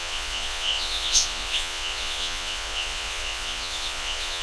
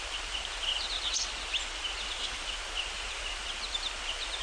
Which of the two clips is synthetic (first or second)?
first